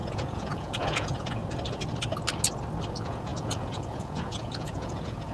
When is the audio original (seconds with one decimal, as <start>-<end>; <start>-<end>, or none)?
1.4-2.9